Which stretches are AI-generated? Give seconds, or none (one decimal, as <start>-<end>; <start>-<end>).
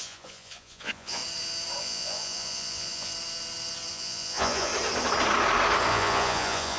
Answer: 0.0-1.2; 1.8-3.1; 3.9-4.7; 5.9-6.8